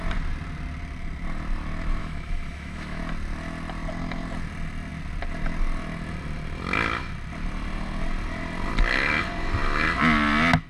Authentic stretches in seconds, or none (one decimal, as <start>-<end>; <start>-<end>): 0.0-2.0; 3.0-10.7